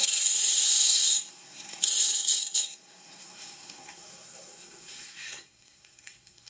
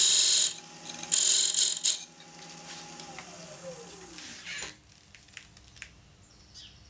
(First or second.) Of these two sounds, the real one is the second